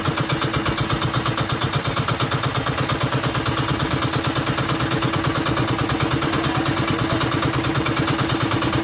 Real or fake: real